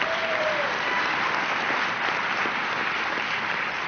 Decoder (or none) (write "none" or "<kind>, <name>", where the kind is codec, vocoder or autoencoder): none